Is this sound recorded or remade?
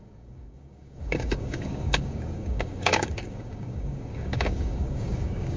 remade